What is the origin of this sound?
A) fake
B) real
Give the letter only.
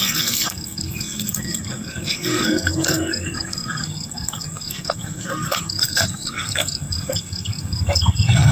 A